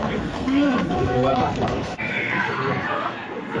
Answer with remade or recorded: remade